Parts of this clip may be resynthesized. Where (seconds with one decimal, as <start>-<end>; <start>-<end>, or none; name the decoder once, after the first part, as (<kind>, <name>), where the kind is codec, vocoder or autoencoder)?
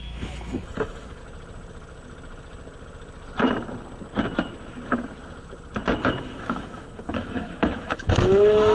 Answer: 0.0-1.2 (autoencoder, DAC-VAE); 6.0-8.7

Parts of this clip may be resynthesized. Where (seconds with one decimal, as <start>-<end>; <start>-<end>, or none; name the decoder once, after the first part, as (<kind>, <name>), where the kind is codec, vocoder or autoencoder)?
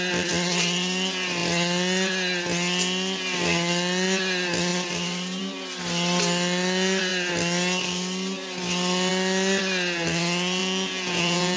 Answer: 10.6-11.6 (vocoder, Vocos)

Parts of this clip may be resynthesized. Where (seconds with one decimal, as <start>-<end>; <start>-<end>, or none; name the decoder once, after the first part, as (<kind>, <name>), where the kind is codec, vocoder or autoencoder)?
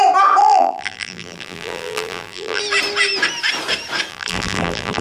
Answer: 0.4-2.6 (vocoder, BigVGAN v2); 4.1-5.0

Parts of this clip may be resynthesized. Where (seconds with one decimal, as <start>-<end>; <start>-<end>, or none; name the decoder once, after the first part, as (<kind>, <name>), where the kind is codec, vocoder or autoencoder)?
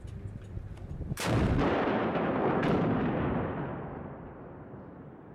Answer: none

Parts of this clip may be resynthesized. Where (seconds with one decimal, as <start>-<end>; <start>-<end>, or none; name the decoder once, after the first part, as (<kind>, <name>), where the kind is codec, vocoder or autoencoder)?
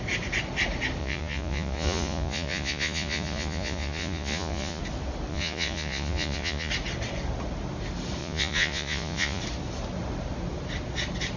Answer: 1.0-4.8 (vocoder, Vocos); 5.3-6.7; 8.2-9.4